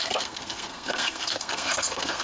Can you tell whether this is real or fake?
fake